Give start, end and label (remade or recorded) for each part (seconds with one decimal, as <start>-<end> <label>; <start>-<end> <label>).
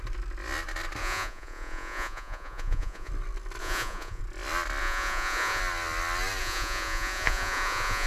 0.0-1.0 recorded; 1.0-3.1 remade; 3.1-3.6 recorded; 3.6-4.2 remade; 4.2-4.8 recorded; 4.8-5.6 remade; 5.6-6.4 recorded; 6.4-8.1 remade